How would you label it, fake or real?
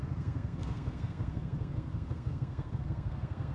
fake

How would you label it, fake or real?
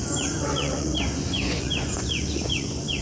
fake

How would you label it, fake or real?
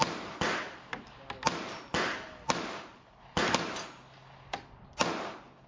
real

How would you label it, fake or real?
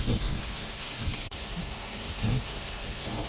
fake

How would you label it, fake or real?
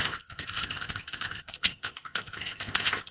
fake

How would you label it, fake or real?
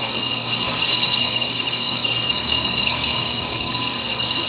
fake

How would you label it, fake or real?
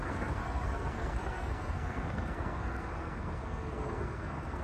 fake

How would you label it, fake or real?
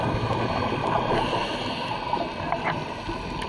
real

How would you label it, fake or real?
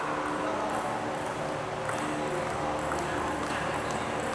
real